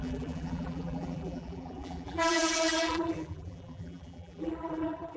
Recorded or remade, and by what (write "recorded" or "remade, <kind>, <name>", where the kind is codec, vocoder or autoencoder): remade, vocoder, BigVGAN v2